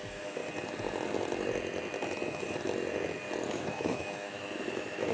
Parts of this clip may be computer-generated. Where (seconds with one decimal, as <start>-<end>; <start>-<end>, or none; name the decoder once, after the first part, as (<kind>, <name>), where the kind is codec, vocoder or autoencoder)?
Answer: 0.0-0.4 (autoencoder, DAC-VAE); 3.5-5.1